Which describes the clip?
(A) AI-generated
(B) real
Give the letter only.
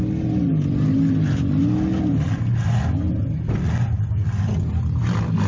B